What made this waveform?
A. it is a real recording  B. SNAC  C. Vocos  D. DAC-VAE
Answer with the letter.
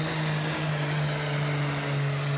A